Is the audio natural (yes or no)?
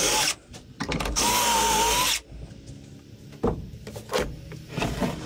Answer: yes